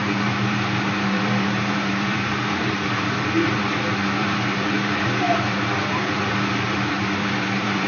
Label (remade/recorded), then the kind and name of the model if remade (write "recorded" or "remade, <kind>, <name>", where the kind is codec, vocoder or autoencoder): remade, vocoder, BigVGAN v2